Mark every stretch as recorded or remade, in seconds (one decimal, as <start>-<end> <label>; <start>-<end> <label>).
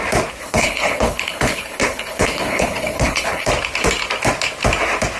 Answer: 0.0-0.4 recorded; 0.4-3.5 remade; 3.5-5.2 recorded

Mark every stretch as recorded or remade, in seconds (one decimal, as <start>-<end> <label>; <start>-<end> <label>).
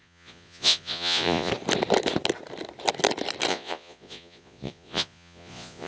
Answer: 0.0-1.5 remade; 1.5-3.5 recorded; 3.5-5.9 remade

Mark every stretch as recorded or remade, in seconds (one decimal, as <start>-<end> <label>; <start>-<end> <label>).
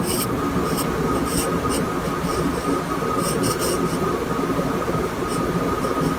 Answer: 0.0-6.2 recorded